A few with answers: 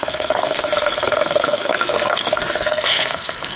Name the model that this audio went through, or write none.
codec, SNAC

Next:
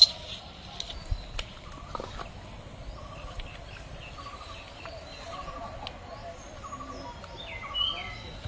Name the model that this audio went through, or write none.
none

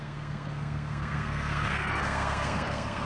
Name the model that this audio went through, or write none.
codec, SNAC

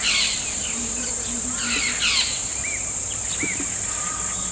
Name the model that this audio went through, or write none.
none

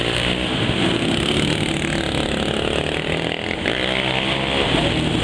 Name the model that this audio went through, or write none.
none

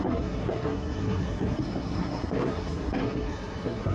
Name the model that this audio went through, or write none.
codec, SNAC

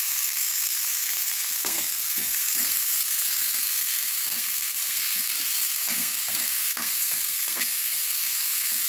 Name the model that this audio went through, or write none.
codec, SNAC